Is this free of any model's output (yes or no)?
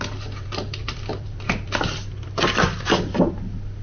no